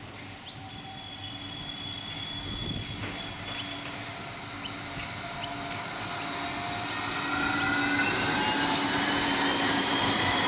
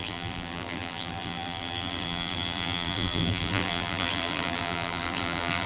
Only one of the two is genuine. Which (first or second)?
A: first